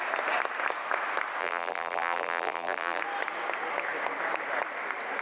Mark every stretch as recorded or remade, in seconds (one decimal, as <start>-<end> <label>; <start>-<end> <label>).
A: 0.0-1.4 recorded; 1.4-3.0 remade; 3.0-5.2 recorded